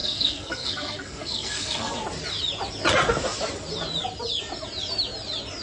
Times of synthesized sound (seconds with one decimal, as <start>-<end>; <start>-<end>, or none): 0.0-1.9